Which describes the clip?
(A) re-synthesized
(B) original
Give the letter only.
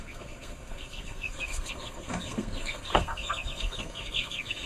A